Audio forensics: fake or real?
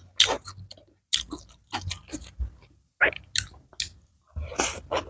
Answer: real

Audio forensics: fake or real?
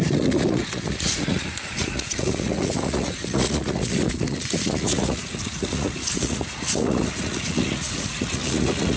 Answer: fake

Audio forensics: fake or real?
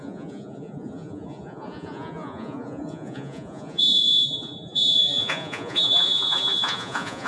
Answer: fake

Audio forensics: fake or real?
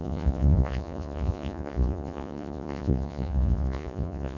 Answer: fake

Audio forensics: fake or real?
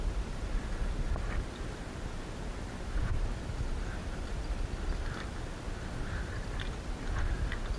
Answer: real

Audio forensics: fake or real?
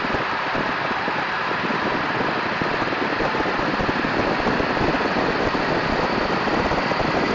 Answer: real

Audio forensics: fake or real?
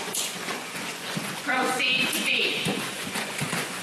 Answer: fake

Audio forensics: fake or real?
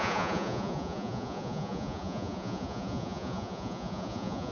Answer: fake